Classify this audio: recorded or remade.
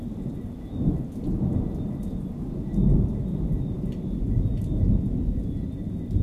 recorded